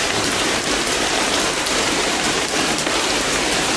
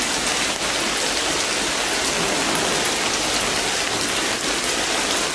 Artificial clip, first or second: first